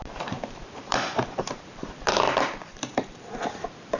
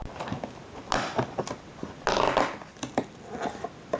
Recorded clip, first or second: second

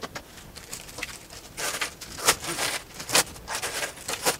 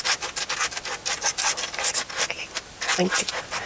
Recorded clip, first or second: second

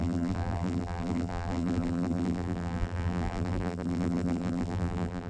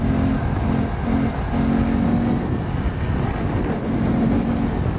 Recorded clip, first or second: second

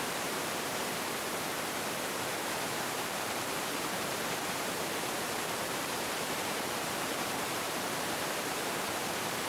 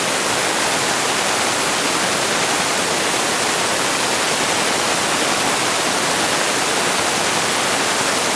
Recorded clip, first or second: second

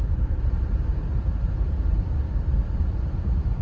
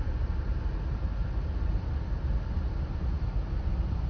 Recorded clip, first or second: second